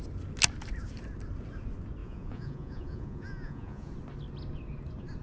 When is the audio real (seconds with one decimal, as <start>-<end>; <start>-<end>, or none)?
0.0-2.0; 3.9-5.2